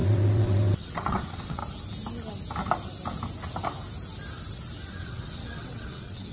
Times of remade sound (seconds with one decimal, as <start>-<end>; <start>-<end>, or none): 0.0-1.6; 4.9-6.3